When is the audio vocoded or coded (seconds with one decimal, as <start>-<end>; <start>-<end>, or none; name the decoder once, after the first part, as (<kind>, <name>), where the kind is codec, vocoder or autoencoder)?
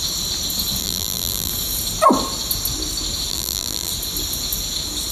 0.8-1.5 (vocoder, BigVGAN v2); 3.3-3.9